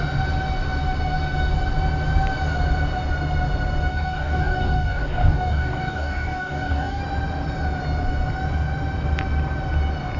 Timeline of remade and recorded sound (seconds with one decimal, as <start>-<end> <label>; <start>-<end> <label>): 0.0-3.9 recorded; 3.9-7.0 remade; 7.0-10.2 recorded